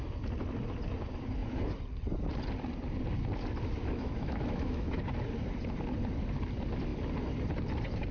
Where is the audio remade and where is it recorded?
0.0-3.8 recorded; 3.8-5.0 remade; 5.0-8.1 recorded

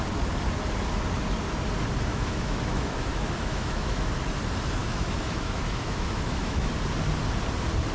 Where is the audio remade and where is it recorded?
0.0-2.1 recorded; 2.1-4.1 remade; 4.1-4.8 recorded; 4.8-6.7 remade; 6.7-7.9 recorded

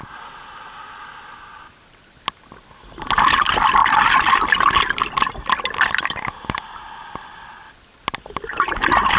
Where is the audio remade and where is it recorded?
0.0-9.2 recorded

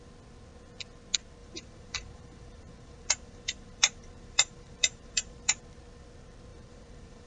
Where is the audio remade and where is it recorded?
0.0-1.4 recorded; 1.4-5.6 remade; 5.6-6.5 recorded; 6.5-7.3 remade

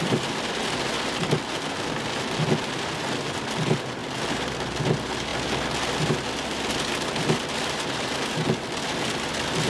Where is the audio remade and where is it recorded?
0.0-9.7 recorded

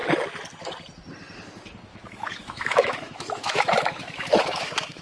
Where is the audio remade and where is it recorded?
0.0-1.9 recorded; 1.9-5.0 remade